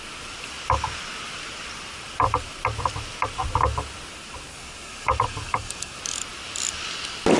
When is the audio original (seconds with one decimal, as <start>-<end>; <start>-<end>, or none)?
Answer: 0.0-4.5; 6.0-7.4